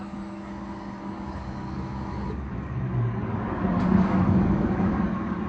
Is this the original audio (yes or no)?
no